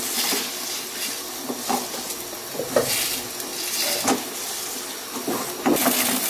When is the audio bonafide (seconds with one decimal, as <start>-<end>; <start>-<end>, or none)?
0.0-6.3